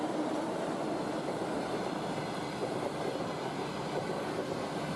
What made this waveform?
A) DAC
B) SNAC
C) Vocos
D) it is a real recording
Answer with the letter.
D